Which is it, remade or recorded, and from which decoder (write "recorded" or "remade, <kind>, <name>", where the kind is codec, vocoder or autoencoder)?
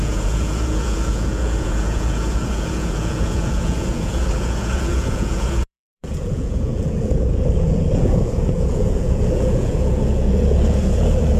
remade, vocoder, Vocos